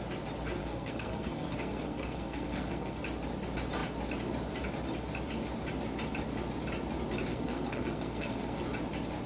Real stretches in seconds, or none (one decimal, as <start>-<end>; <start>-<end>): 0.0-0.6; 3.0-7.3; 8.6-9.3

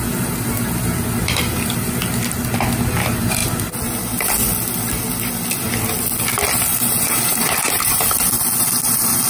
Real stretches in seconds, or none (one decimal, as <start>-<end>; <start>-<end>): 0.0-6.7; 7.9-9.3

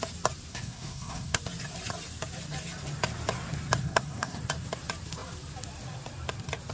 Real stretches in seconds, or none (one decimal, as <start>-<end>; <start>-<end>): 0.0-0.5; 1.4-3.8; 4.4-6.7

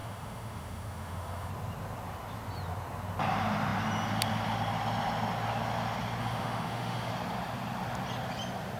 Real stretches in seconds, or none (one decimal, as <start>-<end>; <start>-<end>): 1.5-6.2; 7.1-8.8

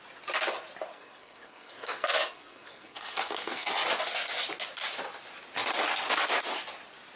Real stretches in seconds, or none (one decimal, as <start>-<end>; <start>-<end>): 0.0-0.9; 3.7-7.2

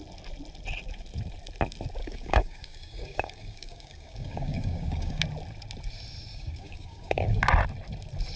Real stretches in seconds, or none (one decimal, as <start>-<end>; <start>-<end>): 0.0-2.0; 5.2-6.3; 7.4-8.4

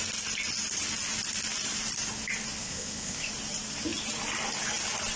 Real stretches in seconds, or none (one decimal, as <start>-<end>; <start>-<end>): 0.0-2.6; 3.3-5.2

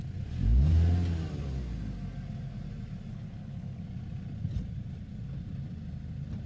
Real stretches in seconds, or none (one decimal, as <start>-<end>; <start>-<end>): 0.0-3.1; 3.8-6.5